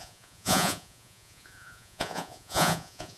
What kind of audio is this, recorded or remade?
remade